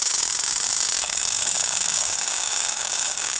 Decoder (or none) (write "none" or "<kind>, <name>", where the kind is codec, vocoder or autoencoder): codec, DAC